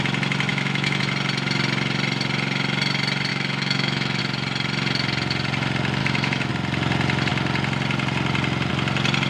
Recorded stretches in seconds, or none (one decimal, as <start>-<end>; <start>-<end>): 0.0-0.5; 1.0-3.3; 4.2-6.0; 6.5-9.3